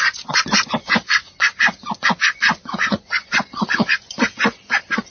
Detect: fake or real fake